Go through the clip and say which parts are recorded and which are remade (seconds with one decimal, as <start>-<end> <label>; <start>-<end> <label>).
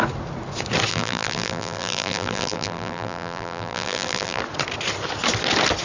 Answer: 0.0-0.9 recorded; 0.9-4.4 remade; 4.4-5.8 recorded